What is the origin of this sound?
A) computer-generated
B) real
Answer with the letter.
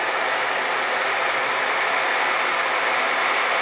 B